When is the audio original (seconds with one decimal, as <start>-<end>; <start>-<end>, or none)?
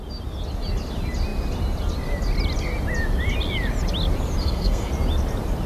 0.0-4.4; 4.9-5.7